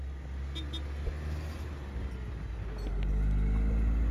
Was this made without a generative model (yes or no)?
yes